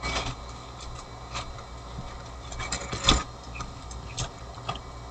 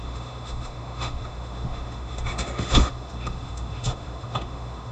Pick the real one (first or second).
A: first